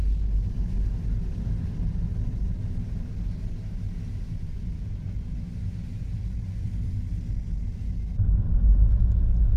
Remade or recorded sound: recorded